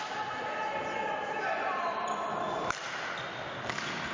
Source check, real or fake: real